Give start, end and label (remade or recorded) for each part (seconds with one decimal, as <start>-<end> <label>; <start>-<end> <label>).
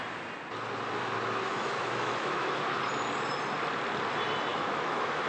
0.0-1.5 recorded; 1.5-2.8 remade; 2.8-4.5 recorded; 4.5-5.3 remade